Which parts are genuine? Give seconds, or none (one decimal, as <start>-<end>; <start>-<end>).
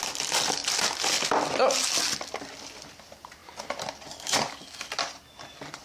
3.4-5.8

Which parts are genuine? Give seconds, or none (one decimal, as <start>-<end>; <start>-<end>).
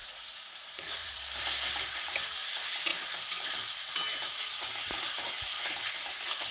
1.2-6.5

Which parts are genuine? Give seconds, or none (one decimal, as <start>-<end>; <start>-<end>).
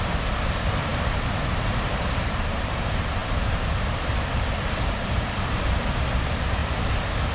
6.6-7.3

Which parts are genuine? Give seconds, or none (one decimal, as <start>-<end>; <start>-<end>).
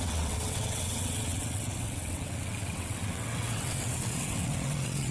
none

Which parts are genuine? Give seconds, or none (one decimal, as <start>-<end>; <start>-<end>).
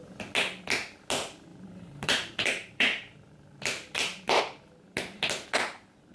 0.0-1.5; 4.4-6.1